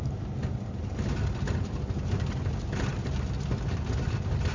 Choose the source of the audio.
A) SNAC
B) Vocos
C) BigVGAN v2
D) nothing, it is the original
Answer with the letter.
D